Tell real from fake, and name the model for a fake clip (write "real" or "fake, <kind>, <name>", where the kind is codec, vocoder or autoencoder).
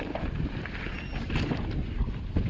fake, vocoder, BigVGAN v2